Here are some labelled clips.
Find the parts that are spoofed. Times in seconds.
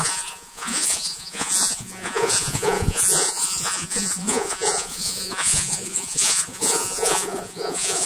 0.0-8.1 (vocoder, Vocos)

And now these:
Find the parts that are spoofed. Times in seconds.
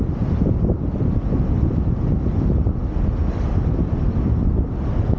none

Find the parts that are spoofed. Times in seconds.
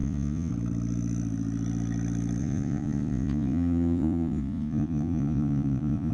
0.0-0.5 (vocoder, Vocos); 2.4-6.1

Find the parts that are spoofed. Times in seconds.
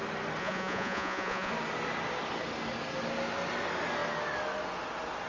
0.4-1.5 (vocoder, Vocos)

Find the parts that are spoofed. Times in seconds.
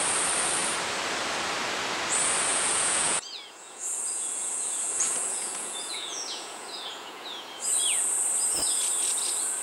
2.5-7.6 (vocoder, Vocos)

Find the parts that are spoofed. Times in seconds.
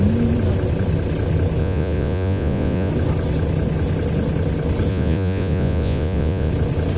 1.6-2.9 (vocoder, Vocos); 4.9-6.5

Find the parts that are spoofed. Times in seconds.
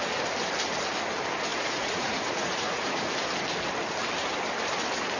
1.5-3.1 (vocoder, Vocos)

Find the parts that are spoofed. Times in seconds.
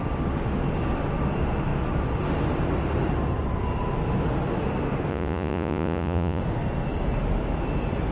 5.1-6.4 (vocoder, Vocos)